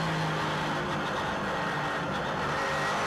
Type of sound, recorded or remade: recorded